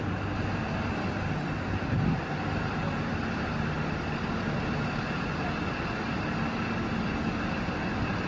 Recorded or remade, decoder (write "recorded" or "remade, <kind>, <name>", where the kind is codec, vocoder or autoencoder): recorded